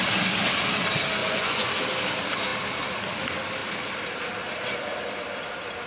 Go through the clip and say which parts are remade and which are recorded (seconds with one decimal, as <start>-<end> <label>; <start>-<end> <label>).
0.0-1.2 recorded; 1.2-1.7 remade; 1.7-5.9 recorded